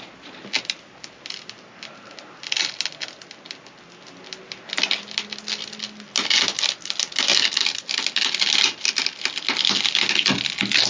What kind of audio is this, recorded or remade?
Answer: recorded